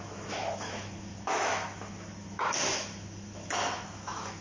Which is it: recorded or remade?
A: remade